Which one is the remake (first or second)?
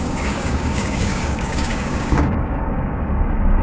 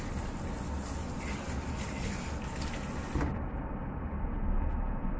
first